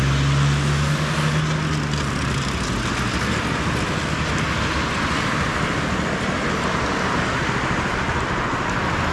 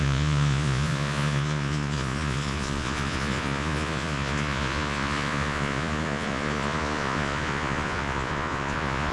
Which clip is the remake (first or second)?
second